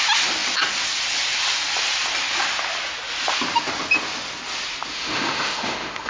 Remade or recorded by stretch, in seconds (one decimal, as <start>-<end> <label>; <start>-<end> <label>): 0.0-4.9 recorded; 4.9-6.1 remade